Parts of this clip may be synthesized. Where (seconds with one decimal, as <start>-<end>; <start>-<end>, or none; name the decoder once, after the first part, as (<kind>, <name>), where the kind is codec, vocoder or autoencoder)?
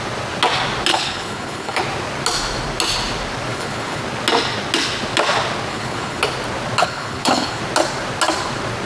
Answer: 0.9-1.8 (codec, HILCodec); 3.5-4.0; 5.7-6.2; 6.8-7.6